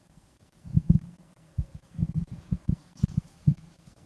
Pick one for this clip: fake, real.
fake